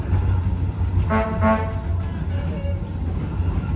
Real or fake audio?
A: real